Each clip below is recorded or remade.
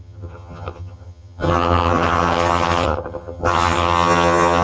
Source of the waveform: remade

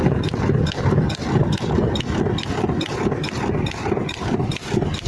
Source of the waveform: recorded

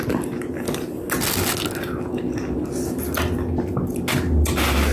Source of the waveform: recorded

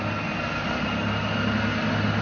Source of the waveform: recorded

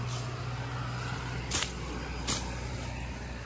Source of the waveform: recorded